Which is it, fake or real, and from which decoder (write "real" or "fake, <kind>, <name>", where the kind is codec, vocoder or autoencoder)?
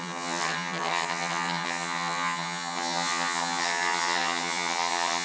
fake, vocoder, HiFi-GAN